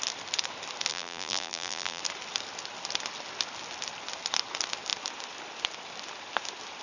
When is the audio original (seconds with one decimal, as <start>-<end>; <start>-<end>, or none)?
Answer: 0.0-0.9; 2.0-6.8